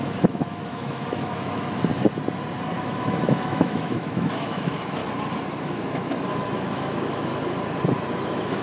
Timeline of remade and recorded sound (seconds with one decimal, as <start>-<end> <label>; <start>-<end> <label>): 0.0-1.9 remade; 1.9-2.7 recorded; 2.7-5.0 remade; 5.0-5.6 recorded; 5.6-7.3 remade; 7.3-8.2 recorded; 8.2-8.6 remade